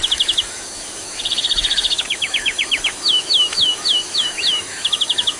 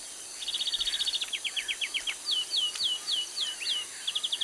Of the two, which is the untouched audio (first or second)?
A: second